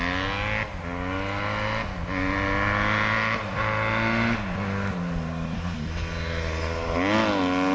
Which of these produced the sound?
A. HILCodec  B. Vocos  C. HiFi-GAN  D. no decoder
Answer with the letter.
D